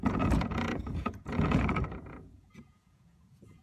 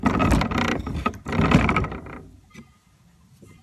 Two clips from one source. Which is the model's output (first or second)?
first